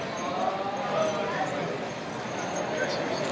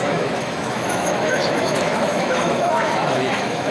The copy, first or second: second